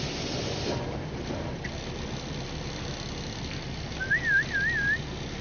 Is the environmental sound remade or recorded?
recorded